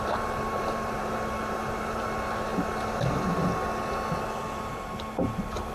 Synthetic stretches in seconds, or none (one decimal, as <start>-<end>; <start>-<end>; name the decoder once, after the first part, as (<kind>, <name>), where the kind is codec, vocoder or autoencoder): 0.0-2.5 (vocoder, BigVGAN v2)